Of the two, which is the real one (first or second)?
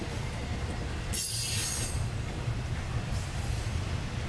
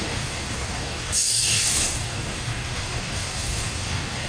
first